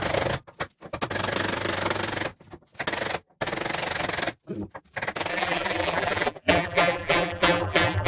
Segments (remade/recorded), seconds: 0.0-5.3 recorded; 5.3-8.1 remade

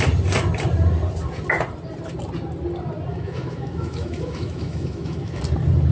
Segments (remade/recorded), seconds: 0.0-3.1 recorded; 3.1-5.4 remade; 5.4-5.9 recorded

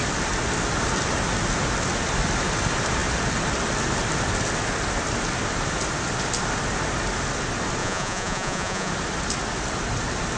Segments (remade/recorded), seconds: 0.0-7.8 recorded; 7.8-8.9 remade; 8.9-10.4 recorded

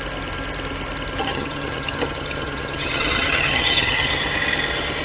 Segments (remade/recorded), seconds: 0.0-1.2 recorded; 1.2-4.2 remade; 4.2-5.0 recorded

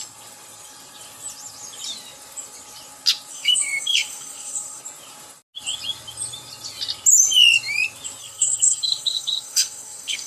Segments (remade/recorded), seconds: 0.0-3.3 recorded; 3.3-4.8 remade; 4.8-8.2 recorded; 8.2-10.3 remade

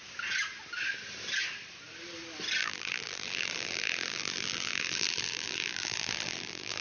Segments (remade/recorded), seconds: 0.0-2.6 recorded; 2.6-6.8 remade

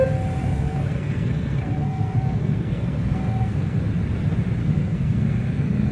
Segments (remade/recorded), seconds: 0.0-0.4 recorded; 0.4-3.9 remade; 3.9-4.6 recorded; 4.6-5.9 remade

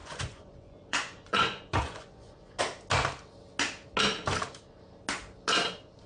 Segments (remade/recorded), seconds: 0.0-2.6 remade; 2.6-6.1 recorded